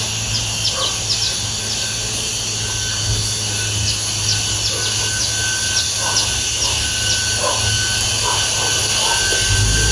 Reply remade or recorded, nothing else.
recorded